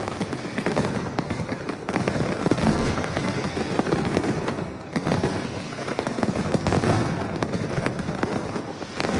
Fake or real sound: fake